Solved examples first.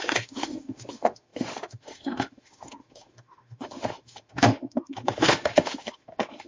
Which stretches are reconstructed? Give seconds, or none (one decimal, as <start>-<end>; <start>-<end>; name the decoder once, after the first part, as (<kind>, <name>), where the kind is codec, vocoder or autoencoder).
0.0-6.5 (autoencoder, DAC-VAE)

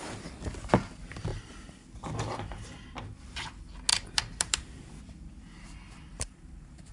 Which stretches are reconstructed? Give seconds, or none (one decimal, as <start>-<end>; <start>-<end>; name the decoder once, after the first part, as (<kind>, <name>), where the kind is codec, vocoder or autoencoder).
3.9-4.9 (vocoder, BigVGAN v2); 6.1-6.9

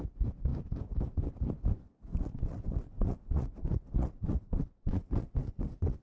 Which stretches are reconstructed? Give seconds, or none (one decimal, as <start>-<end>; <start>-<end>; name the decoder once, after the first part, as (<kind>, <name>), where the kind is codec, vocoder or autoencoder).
2.1-6.0 (vocoder, WaveNeXt)

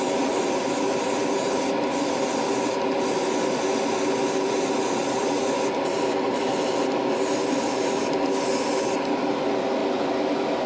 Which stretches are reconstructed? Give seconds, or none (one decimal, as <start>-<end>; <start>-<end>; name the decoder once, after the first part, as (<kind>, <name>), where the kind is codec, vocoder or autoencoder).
none

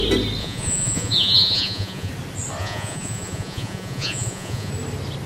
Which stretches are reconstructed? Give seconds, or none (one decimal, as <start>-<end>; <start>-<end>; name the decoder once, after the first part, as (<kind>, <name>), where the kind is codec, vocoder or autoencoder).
0.4-2.1 (vocoder, Vocos); 2.6-4.7

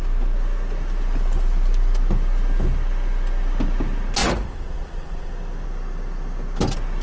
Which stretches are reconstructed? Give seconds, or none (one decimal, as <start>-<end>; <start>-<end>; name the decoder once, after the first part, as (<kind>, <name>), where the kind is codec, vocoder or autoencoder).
4.2-5.3 (vocoder, Vocos)

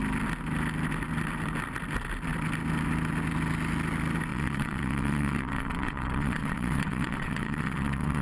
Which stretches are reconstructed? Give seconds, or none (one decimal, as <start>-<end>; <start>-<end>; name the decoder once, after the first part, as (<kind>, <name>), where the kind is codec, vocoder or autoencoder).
4.3-8.2 (vocoder, WaveNeXt)

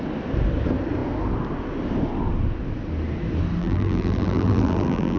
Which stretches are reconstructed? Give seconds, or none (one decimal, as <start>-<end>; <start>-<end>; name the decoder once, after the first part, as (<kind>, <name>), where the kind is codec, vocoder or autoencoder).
3.6-5.2 (vocoder, BigVGAN v2)